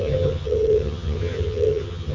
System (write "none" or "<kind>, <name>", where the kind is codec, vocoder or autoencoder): vocoder, HiFi-GAN